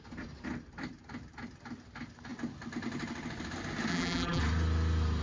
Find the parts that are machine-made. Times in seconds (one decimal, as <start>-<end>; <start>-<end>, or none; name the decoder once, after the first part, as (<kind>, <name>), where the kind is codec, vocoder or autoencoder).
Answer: 3.9-4.4 (vocoder, BigVGAN v2)